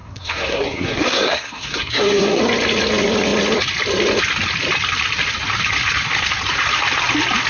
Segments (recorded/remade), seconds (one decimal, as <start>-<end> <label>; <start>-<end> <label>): 0.0-2.4 remade; 2.4-7.5 recorded